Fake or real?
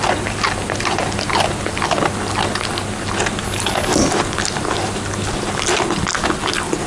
real